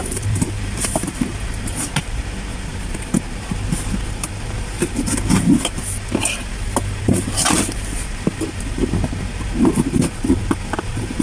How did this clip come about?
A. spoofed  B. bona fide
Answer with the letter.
A